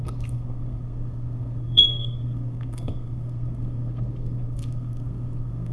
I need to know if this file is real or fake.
fake